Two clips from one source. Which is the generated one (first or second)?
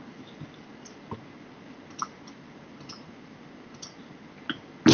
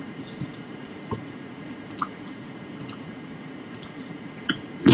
second